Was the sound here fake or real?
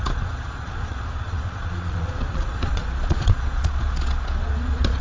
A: fake